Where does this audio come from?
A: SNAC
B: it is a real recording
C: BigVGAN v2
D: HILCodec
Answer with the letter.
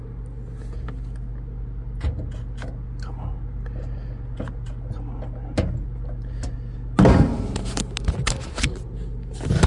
B